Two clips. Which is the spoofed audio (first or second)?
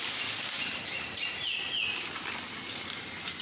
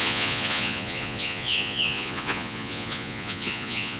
second